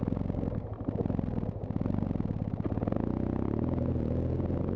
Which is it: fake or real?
real